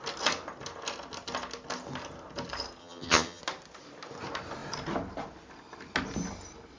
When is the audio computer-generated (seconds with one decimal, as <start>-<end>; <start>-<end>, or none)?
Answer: 2.8-3.4